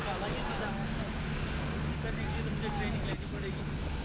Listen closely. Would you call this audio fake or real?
real